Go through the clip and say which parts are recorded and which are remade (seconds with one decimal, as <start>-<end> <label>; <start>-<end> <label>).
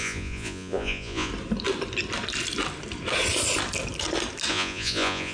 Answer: 0.0-1.3 remade; 1.3-4.5 recorded; 4.5-5.3 remade